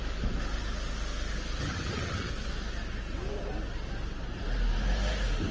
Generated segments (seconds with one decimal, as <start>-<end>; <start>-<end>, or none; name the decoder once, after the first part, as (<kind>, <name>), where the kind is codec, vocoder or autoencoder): 1.6-2.3 (vocoder, HiFi-GAN)